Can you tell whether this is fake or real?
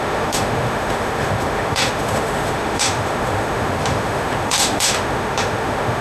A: fake